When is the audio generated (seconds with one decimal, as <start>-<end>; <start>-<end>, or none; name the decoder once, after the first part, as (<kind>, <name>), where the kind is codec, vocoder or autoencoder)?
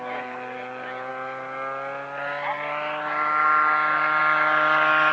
none